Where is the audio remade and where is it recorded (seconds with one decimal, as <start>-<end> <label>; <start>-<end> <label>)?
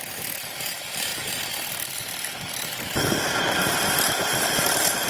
0.0-3.6 recorded; 3.6-5.1 remade